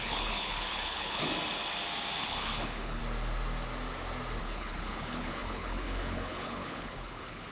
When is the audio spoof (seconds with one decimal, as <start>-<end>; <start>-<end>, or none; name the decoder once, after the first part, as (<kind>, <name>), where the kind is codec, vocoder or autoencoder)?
0.0-1.2 (codec, HILCodec); 2.2-3.0; 4.4-7.5